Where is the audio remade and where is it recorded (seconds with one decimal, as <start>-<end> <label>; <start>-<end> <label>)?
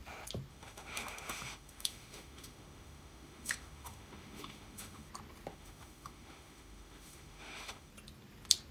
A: 0.0-0.5 recorded; 0.5-5.1 remade; 5.1-5.5 recorded; 5.5-7.9 remade; 7.9-8.7 recorded